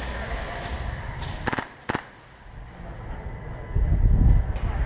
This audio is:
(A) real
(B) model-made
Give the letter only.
A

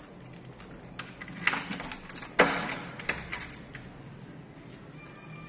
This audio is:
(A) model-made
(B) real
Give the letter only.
B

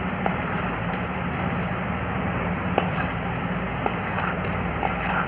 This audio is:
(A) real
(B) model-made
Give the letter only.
A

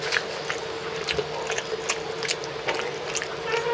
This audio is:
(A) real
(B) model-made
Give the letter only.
A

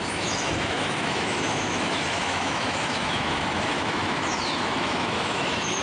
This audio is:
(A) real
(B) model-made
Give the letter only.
B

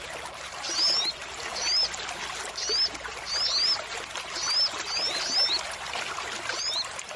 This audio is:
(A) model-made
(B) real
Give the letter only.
B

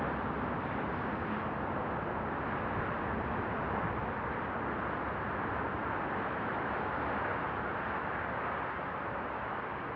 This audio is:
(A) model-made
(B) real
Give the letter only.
B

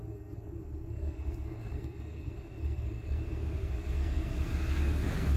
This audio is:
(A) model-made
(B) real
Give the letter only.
A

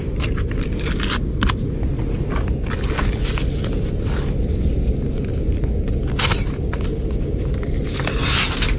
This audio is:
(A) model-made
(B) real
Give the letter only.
B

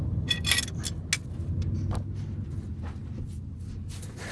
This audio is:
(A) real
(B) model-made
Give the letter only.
A